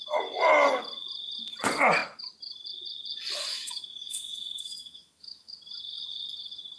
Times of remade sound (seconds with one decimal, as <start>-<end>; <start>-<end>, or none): 3.5-5.5